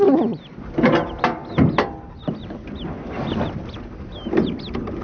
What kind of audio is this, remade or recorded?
recorded